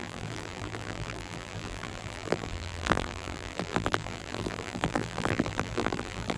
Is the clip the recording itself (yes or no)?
no